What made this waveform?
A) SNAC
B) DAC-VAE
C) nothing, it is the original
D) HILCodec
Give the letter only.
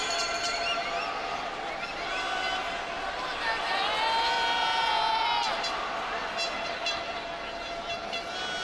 C